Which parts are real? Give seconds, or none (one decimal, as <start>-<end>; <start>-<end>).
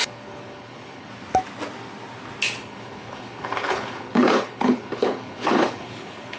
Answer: 1.1-2.6